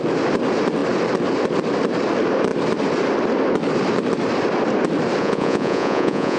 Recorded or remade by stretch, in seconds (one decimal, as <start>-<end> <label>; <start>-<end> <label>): 0.0-5.2 recorded; 5.2-6.4 remade